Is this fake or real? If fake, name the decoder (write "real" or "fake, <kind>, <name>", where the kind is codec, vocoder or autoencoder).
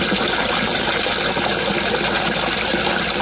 real